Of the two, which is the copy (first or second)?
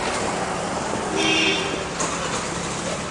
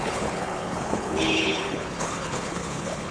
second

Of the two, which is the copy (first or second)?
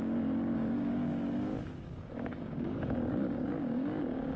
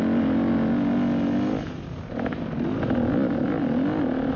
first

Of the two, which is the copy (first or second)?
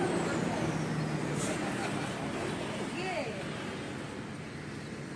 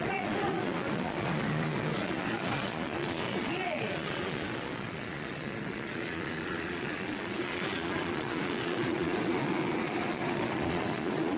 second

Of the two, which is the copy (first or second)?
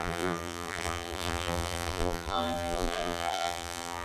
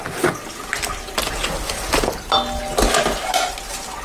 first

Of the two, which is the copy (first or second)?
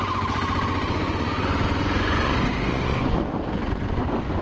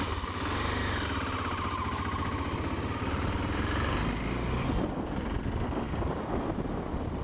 first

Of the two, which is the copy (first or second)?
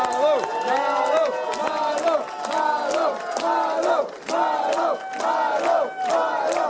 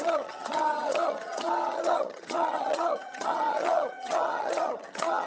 second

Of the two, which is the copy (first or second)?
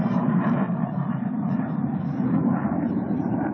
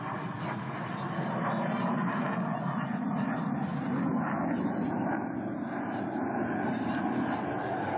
first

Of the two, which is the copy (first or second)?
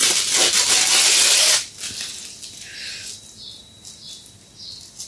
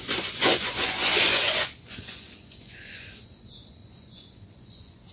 second